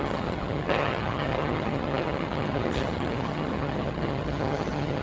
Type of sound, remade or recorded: remade